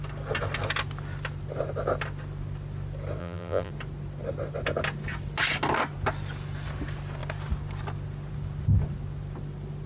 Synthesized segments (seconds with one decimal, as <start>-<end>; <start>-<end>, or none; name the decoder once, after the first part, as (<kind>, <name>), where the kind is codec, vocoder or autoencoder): 3.2-3.7 (vocoder, BigVGAN v2)